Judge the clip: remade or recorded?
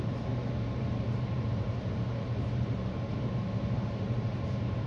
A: remade